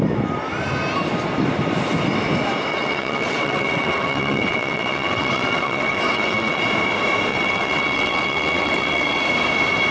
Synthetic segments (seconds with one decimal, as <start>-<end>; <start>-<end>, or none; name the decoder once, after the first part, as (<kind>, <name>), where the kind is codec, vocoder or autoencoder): 2.7-6.6 (vocoder, WaveNeXt); 7.3-9.2